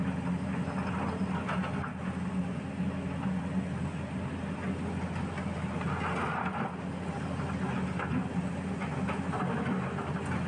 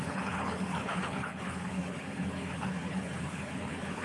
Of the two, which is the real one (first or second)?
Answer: first